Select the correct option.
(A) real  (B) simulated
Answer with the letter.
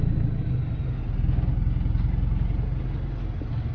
A